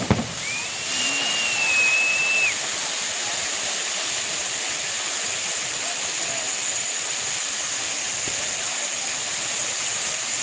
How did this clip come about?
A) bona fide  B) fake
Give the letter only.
A